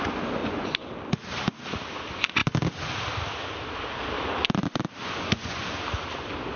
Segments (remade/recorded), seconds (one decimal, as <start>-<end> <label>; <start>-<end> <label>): 0.0-0.4 recorded; 0.4-0.9 remade; 0.9-5.0 recorded; 5.0-5.6 remade; 5.6-6.6 recorded